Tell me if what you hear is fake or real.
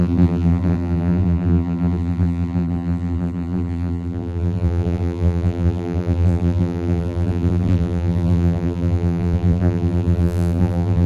fake